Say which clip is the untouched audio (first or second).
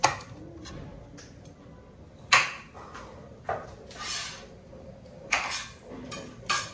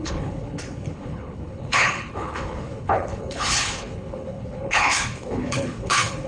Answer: first